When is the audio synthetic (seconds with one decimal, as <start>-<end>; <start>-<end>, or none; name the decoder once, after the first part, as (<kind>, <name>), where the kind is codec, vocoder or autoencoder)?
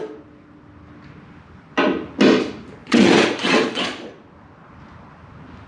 2.8-4.1 (vocoder, Vocos)